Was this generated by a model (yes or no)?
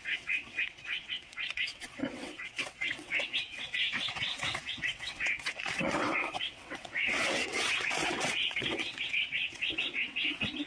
yes